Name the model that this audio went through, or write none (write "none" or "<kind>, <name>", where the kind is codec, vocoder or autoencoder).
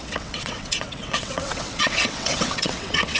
vocoder, WaveNeXt